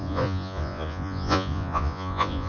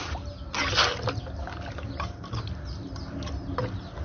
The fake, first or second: first